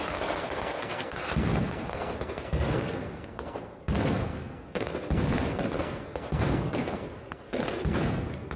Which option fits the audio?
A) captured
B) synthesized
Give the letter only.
B